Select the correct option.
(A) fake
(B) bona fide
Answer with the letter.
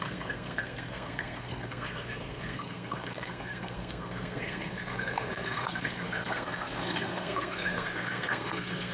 A